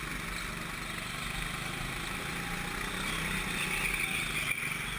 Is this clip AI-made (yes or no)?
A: no